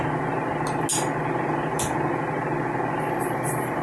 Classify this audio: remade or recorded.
recorded